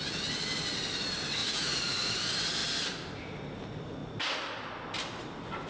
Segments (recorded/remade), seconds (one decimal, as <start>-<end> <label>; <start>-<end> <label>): 0.0-1.4 recorded; 1.4-2.1 remade; 2.1-5.7 recorded